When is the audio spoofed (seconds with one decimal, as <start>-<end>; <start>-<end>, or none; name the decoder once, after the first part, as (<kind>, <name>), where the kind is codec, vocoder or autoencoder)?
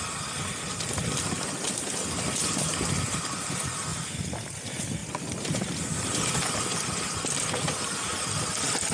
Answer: none